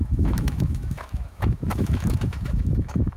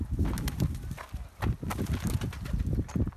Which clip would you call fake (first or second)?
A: first